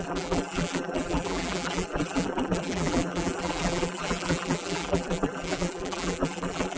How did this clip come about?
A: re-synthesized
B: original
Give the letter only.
A